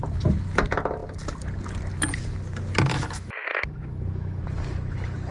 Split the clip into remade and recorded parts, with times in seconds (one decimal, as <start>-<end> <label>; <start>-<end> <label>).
0.0-2.9 recorded; 2.9-4.4 remade; 4.4-5.3 recorded